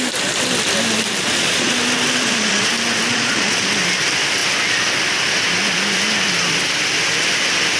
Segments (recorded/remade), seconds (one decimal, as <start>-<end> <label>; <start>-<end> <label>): 0.0-1.2 recorded; 1.2-1.7 remade; 1.7-2.2 recorded; 2.2-2.7 remade; 2.7-3.1 recorded; 3.1-3.7 remade; 3.7-7.8 recorded